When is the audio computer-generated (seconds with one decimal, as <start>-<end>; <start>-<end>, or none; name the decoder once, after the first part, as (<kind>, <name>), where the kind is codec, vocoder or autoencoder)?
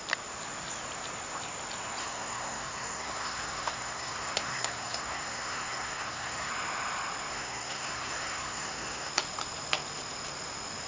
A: 2.0-6.5 (codec, SNAC); 7.3-9.1